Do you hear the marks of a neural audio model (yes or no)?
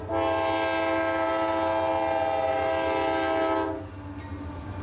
no